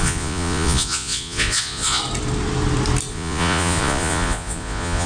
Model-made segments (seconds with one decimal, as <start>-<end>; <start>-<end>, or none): 0.0-2.0; 3.1-5.1